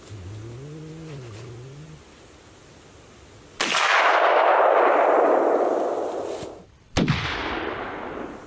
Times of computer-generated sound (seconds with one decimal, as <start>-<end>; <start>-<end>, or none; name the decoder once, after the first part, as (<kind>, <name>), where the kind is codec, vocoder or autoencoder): none